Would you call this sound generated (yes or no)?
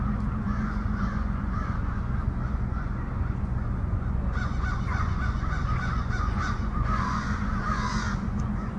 yes